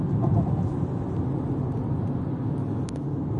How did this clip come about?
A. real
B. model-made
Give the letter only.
A